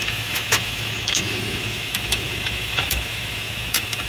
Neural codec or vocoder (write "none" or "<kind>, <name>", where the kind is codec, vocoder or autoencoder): autoencoder, DAC-VAE